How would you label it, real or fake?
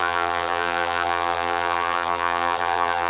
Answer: fake